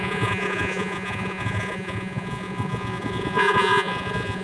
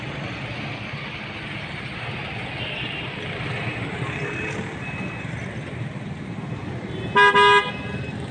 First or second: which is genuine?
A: second